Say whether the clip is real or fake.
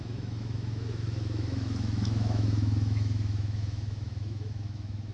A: fake